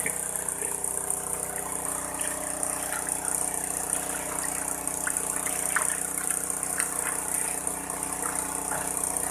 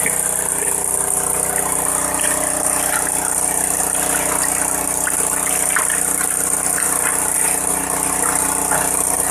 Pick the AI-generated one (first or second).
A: first